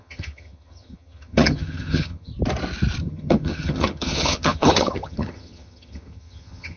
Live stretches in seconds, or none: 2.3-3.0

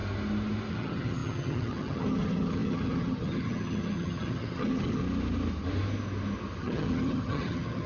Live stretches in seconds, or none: 0.0-0.7; 5.0-6.6

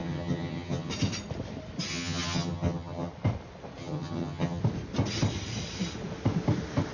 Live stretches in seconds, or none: 0.9-1.9; 3.1-3.8; 4.6-6.9

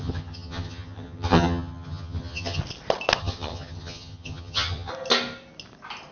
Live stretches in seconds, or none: 2.6-3.2; 4.9-6.1